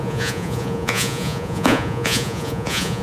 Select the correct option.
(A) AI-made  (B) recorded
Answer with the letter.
A